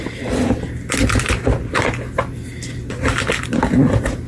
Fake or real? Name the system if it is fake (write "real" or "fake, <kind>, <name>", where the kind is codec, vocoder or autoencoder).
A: real